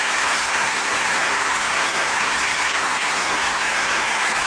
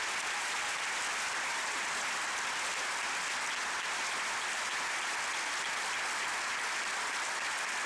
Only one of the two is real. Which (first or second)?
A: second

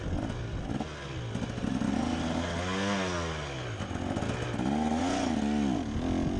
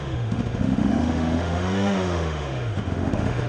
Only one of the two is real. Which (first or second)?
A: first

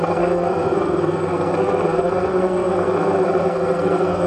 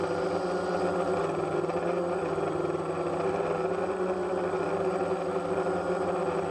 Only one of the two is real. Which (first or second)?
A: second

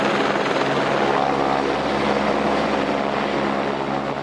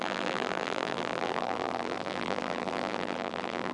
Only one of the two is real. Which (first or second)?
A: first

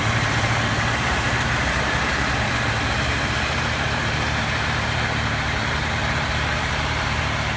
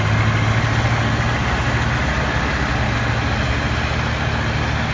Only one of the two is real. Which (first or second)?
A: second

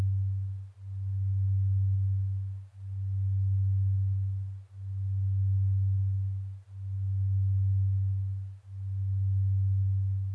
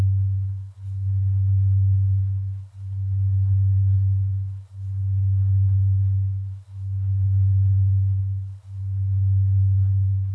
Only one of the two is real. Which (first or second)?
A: first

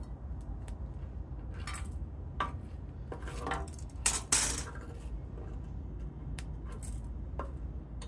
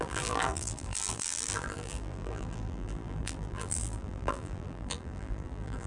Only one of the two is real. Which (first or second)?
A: first